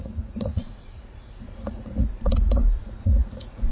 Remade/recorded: remade